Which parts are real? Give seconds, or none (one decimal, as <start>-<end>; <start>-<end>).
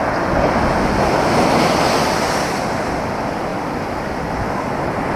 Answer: 0.0-2.0; 2.9-3.5; 4.5-5.2